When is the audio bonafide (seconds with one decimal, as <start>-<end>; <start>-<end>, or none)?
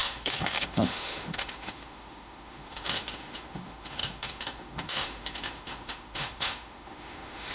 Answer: none